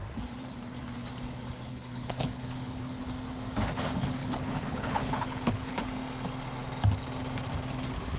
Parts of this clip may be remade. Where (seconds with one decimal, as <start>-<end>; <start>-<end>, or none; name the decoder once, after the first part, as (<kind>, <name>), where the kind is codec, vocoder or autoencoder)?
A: 1.7-3.1 (codec, HILCodec); 4.2-5.8